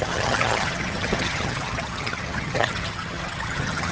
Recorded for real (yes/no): no